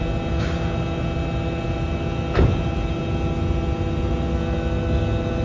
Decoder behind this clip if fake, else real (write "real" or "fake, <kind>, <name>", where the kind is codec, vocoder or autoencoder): real